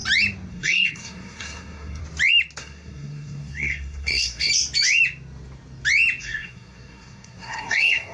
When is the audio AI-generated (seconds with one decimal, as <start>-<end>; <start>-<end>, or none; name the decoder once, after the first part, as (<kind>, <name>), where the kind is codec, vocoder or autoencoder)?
0.5-2.0 (codec, SNAC); 2.6-4.5; 6.2-8.1